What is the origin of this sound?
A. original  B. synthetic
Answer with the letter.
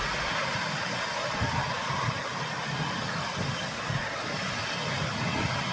A